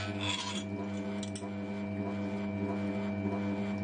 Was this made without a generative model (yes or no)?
yes